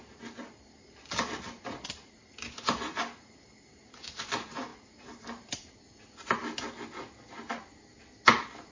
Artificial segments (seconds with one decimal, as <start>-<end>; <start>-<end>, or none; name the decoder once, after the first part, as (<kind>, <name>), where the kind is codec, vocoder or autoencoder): none